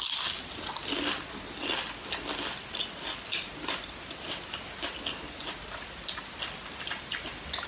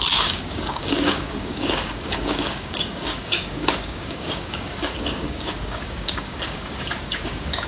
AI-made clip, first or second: second